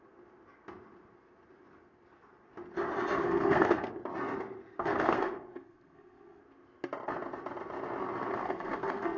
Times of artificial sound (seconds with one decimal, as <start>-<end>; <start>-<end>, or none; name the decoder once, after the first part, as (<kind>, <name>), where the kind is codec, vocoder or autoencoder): 3.2-3.9 (codec, SNAC); 4.8-6.4; 8.4-9.2